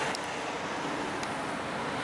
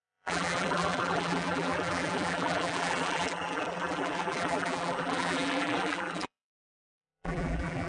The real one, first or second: first